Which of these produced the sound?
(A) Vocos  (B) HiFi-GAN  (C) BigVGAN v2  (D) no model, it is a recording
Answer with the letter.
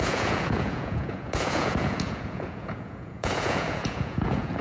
A